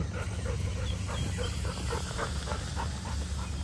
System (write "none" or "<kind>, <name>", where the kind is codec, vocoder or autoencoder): none